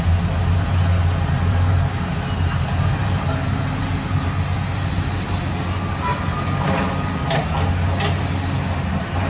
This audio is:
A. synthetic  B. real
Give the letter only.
B